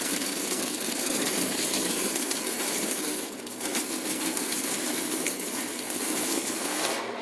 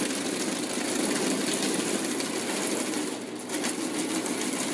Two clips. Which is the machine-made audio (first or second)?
first